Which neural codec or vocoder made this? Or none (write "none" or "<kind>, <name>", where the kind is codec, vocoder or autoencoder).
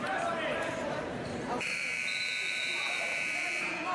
vocoder, BigVGAN v2